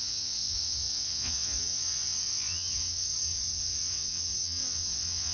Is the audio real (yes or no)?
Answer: no